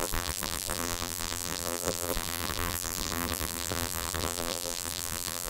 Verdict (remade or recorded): remade